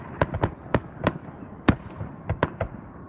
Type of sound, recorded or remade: remade